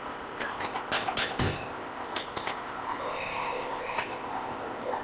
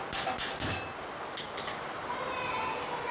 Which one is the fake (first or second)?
first